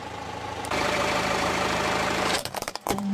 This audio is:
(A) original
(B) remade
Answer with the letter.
B